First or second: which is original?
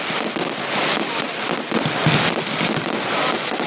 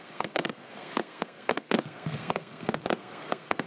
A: first